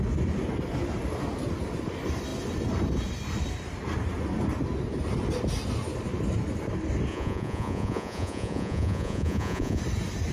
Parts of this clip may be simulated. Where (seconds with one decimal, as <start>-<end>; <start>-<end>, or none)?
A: 7.1-9.8